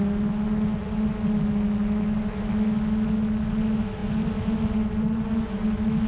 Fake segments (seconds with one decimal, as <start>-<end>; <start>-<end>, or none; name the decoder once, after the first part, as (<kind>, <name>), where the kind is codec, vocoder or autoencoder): none